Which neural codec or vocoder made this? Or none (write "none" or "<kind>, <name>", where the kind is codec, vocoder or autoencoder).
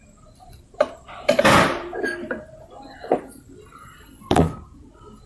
vocoder, BigVGAN v2